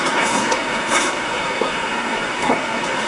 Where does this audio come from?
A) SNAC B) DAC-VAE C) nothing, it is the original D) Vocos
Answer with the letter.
A